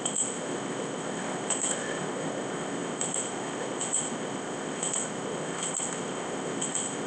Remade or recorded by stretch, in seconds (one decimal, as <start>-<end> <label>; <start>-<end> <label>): 0.0-7.1 remade